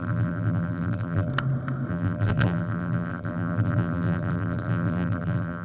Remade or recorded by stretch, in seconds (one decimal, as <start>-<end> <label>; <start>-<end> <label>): 0.0-1.3 remade; 1.3-1.9 recorded; 1.9-5.6 remade